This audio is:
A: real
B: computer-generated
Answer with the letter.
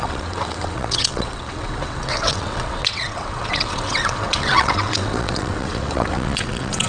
B